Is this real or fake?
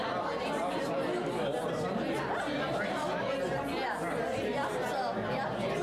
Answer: real